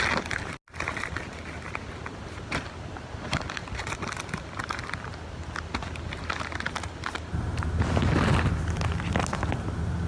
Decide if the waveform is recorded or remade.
recorded